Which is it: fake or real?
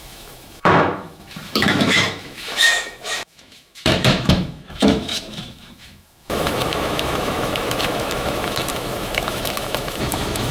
fake